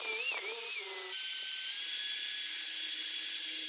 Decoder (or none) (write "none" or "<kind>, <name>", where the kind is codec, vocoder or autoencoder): none